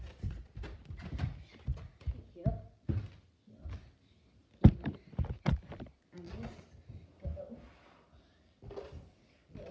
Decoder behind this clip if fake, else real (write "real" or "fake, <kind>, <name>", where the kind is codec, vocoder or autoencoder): real